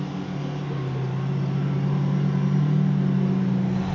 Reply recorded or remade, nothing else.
recorded